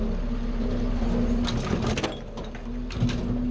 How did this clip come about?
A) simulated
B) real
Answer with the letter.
B